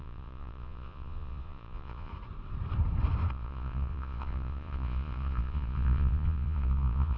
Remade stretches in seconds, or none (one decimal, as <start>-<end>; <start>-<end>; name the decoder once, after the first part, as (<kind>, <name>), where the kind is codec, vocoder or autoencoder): 0.0-2.1 (vocoder, Vocos); 3.3-7.2